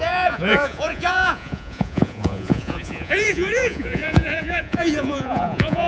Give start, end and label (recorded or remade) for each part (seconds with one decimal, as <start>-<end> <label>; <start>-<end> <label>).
0.0-5.9 remade